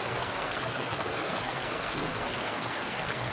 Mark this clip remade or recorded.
remade